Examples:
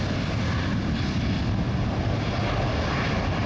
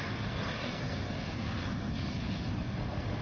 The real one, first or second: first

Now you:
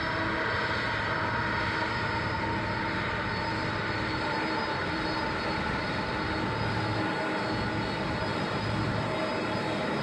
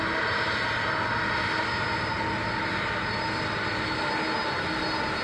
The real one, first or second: second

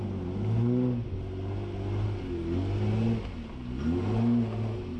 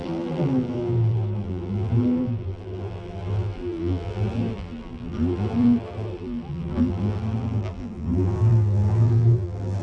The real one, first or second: first